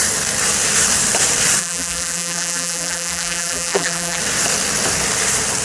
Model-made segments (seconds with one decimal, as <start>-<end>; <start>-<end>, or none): 1.6-4.2